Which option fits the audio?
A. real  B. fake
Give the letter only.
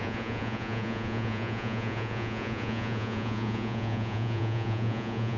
B